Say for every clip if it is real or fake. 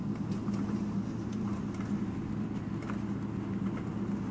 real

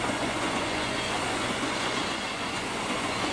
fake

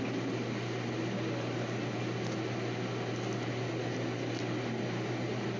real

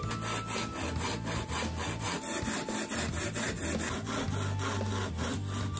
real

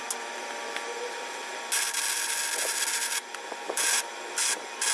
real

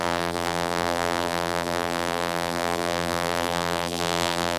fake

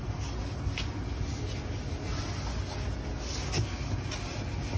real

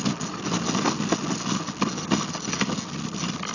real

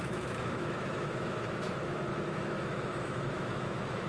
fake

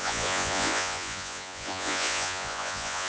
fake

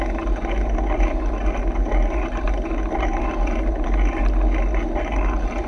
real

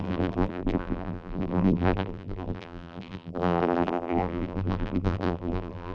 fake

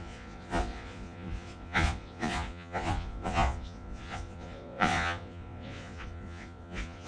fake